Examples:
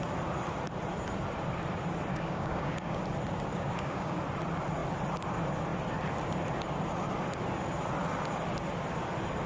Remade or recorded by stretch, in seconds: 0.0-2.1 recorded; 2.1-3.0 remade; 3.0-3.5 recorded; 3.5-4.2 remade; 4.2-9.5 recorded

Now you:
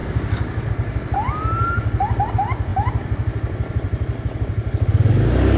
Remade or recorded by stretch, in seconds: 0.0-0.7 remade; 0.7-5.6 recorded

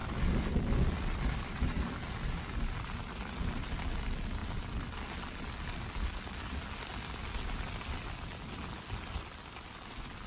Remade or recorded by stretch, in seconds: 0.0-10.3 recorded

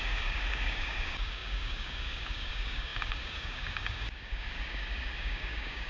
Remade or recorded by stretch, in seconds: 0.0-5.9 remade